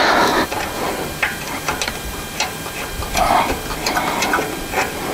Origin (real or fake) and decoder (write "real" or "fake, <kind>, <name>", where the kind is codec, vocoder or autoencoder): real